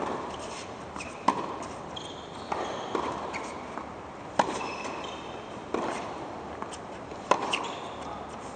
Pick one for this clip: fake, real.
real